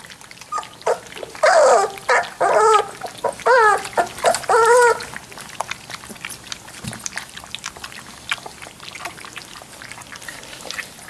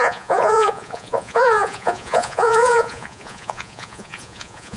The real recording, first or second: first